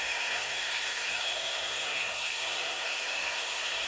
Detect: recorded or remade remade